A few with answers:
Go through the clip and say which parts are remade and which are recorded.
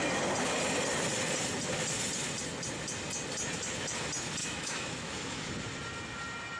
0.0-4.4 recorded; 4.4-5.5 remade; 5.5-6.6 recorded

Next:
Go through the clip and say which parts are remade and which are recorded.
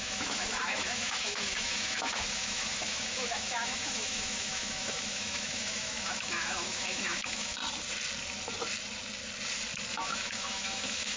0.0-7.6 remade; 7.6-9.9 recorded; 9.9-11.2 remade